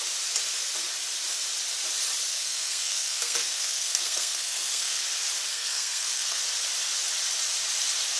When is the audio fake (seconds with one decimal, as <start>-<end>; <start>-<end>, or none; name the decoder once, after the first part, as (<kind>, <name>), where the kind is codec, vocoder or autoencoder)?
2.3-5.0 (codec, SNAC); 5.5-6.4